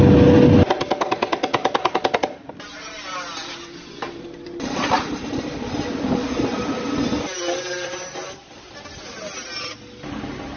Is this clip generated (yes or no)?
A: no